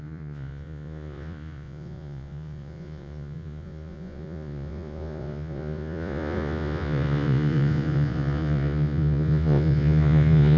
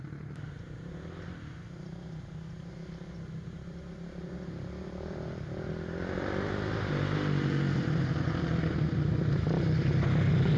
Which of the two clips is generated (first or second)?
first